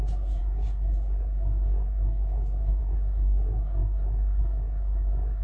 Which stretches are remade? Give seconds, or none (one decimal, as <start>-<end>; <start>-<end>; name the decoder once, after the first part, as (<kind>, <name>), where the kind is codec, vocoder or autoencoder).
0.0-5.4 (codec, SNAC)